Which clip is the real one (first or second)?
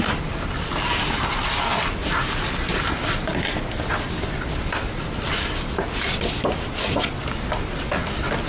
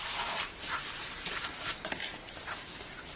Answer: first